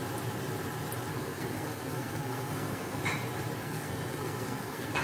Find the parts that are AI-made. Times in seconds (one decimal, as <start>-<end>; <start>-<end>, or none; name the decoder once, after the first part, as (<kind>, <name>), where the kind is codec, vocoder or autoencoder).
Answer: 1.1-3.0 (codec, SNAC); 3.6-5.0